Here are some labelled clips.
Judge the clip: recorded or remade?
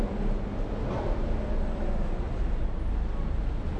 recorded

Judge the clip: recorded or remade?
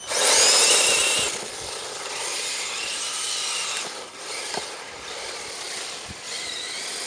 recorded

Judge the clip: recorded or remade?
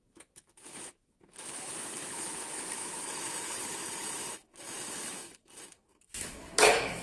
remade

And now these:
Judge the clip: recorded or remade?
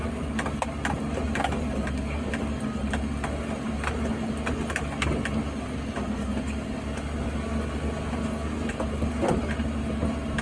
recorded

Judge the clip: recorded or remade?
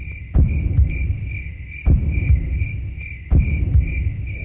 recorded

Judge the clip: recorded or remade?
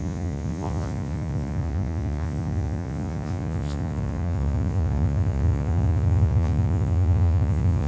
remade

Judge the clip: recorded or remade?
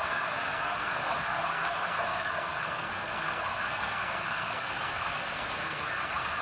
remade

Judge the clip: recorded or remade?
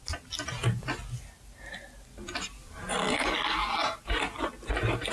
recorded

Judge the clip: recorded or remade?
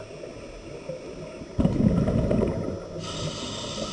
recorded